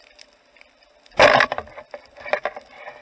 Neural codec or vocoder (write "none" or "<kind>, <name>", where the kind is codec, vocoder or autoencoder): none